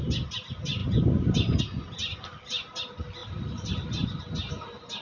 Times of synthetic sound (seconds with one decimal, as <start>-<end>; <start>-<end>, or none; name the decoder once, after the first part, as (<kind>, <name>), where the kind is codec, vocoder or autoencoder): 0.8-1.6 (vocoder, BigVGAN v2); 3.2-4.2

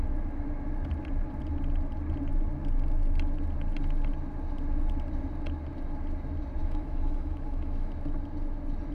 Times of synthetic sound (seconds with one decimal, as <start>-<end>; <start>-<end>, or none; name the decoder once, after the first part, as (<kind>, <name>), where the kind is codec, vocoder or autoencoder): 6.6-7.9 (autoencoder, DAC-VAE)

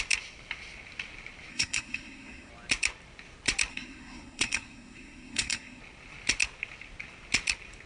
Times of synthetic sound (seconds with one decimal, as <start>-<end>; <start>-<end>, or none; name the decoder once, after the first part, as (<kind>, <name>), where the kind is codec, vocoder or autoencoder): 1.5-2.5 (codec, SNAC); 3.7-5.8

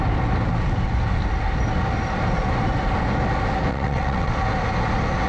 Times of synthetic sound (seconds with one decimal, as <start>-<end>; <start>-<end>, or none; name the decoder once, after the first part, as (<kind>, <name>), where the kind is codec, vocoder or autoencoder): 3.7-4.3 (vocoder, WaveNeXt)

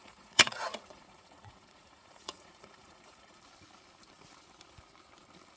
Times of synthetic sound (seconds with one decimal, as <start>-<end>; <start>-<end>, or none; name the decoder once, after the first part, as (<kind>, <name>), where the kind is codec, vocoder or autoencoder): 0.0-3.4 (vocoder, Vocos)

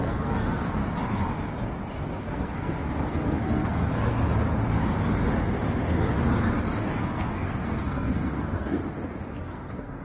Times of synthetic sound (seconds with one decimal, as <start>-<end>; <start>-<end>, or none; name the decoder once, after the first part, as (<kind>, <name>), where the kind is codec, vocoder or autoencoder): 0.0-0.8 (codec, SNAC); 2.2-4.2; 6.9-8.8; 9.4-10.0

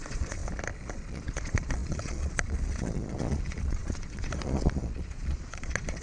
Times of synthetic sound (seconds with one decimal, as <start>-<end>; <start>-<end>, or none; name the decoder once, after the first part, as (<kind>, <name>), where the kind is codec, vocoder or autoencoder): 0.0-0.4 (vocoder, Vocos); 1.1-6.0